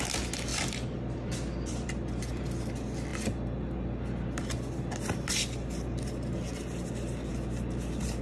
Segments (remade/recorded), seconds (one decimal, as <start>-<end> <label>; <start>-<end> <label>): 0.0-0.5 recorded; 0.5-2.7 remade; 2.7-8.2 recorded